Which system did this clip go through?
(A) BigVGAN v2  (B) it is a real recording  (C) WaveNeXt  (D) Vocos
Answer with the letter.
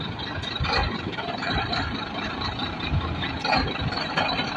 A